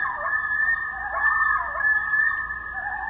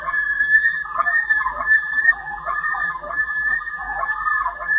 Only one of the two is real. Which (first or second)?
first